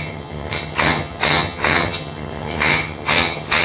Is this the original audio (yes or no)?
no